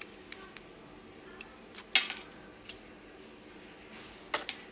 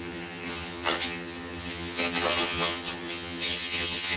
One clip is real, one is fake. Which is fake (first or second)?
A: second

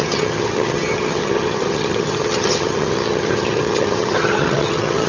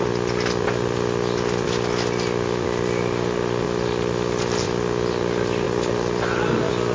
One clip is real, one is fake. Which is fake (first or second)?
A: first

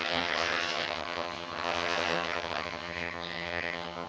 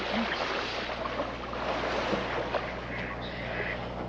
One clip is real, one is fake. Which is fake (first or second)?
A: first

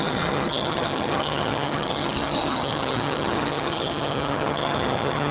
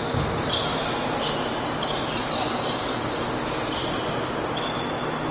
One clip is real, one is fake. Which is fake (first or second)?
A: first